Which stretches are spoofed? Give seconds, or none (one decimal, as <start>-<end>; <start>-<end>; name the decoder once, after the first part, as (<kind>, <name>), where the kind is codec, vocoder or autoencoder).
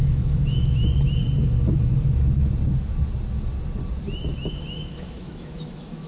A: 0.0-0.8 (autoencoder, DAC-VAE); 4.5-6.1